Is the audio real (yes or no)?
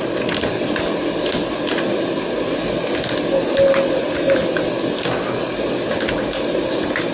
yes